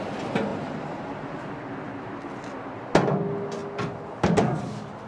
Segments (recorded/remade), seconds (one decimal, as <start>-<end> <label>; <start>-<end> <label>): 0.0-0.5 recorded; 0.5-1.4 remade; 1.4-5.1 recorded